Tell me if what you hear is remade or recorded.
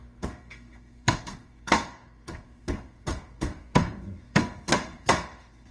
remade